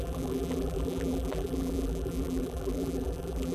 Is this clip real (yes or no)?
no